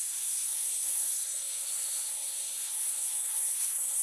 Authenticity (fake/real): fake